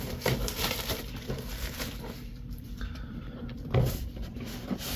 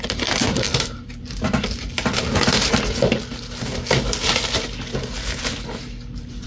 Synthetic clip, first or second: first